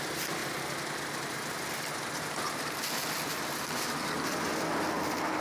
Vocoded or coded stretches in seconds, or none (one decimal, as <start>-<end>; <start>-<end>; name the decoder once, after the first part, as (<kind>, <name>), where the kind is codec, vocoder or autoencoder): none